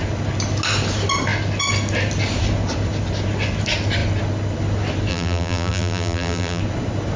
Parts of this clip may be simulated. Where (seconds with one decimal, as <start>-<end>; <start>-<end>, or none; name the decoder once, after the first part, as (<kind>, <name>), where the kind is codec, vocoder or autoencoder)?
5.1-6.6 (vocoder, BigVGAN v2)